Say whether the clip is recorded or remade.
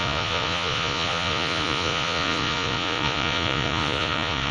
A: remade